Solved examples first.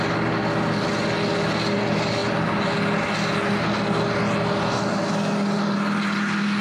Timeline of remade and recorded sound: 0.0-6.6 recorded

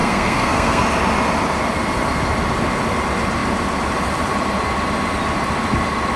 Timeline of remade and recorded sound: 0.0-0.8 remade; 0.8-6.2 recorded

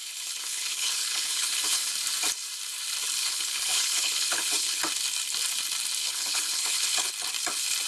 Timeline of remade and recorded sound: 0.0-1.9 remade; 1.9-3.2 recorded; 3.2-4.8 remade; 4.8-6.0 recorded; 6.0-7.1 remade; 7.1-7.9 recorded

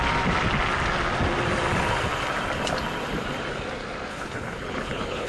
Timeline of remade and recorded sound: 0.0-4.1 recorded; 4.1-5.3 remade

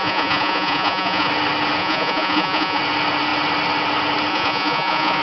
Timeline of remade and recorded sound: 0.0-1.3 remade; 1.3-1.8 recorded; 1.8-2.8 remade; 2.8-4.3 recorded; 4.3-5.2 remade